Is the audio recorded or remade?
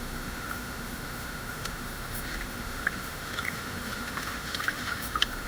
remade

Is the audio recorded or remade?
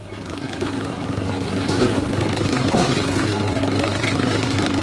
remade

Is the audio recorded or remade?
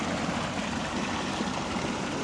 recorded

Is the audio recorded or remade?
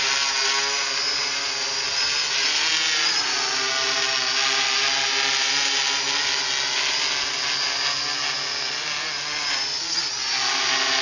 recorded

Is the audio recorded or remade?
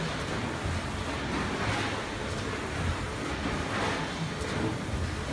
recorded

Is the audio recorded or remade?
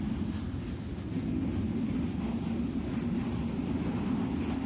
recorded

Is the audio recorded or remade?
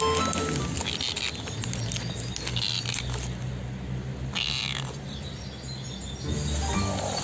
recorded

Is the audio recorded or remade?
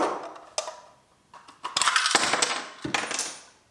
recorded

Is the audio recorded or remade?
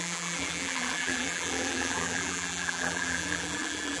remade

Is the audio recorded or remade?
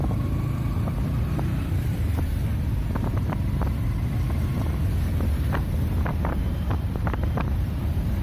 remade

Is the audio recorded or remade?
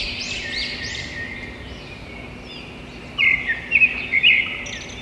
recorded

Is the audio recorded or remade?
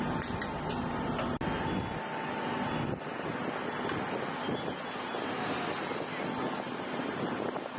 recorded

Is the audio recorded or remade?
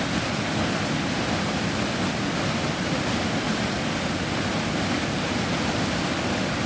recorded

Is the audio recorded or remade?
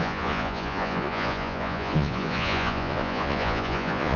remade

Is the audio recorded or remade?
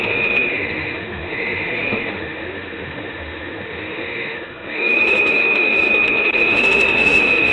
remade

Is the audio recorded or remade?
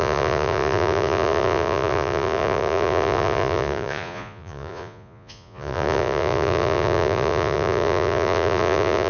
remade